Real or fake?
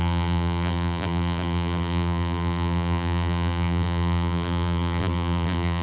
fake